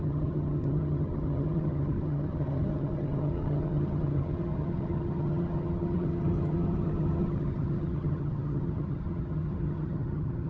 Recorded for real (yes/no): no